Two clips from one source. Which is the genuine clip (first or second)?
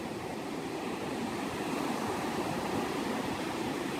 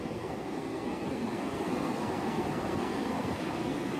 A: first